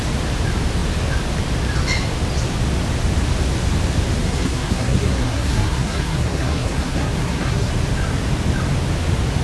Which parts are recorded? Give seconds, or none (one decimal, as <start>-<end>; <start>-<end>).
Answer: 0.0-4.2; 7.7-9.4